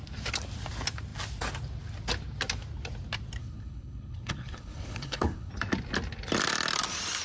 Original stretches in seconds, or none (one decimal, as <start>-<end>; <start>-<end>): 0.0-3.4; 5.5-7.2